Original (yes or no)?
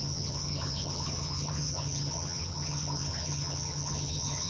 no